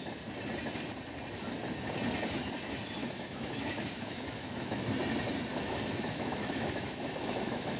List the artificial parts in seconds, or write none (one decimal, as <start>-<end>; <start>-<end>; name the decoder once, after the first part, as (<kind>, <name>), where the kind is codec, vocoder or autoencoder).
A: 3.0-4.8 (autoencoder, DAC-VAE); 5.5-7.8